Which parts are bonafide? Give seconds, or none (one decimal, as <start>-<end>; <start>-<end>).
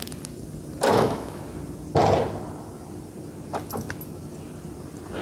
0.0-0.9; 1.4-5.2